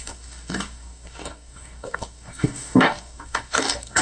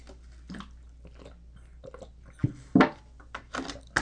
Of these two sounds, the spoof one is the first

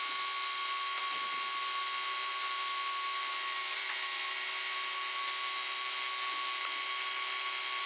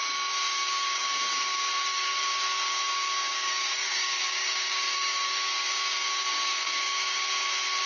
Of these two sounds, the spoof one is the second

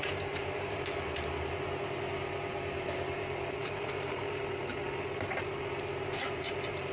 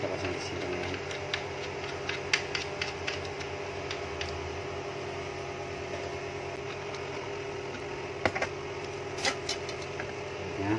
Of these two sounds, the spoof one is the first